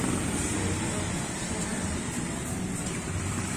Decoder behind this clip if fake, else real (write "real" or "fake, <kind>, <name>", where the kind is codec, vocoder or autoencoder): fake, vocoder, BigVGAN v2